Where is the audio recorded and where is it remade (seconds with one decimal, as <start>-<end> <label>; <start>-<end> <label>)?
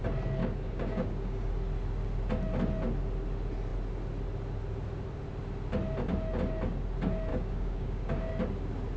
0.0-0.4 recorded; 0.4-1.5 remade; 1.5-7.3 recorded; 7.3-8.3 remade; 8.3-9.0 recorded